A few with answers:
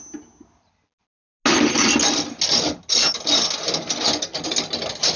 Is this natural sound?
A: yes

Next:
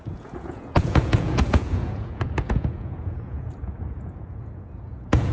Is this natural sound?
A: no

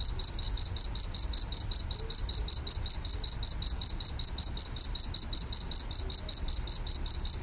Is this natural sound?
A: yes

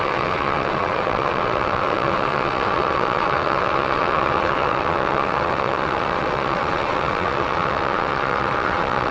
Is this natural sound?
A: no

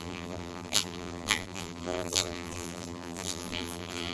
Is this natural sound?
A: no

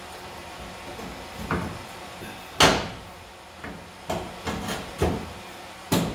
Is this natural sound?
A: yes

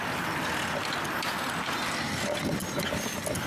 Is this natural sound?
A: yes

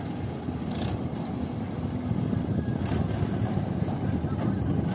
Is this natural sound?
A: yes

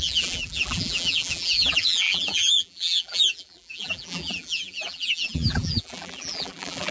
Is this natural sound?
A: no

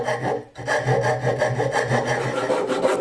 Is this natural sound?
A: yes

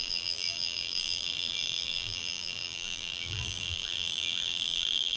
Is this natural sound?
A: no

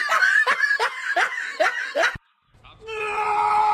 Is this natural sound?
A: yes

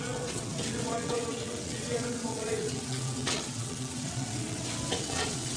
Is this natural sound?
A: no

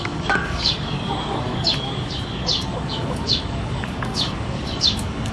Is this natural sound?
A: no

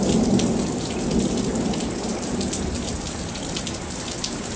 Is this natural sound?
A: yes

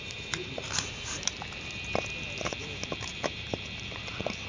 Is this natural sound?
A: no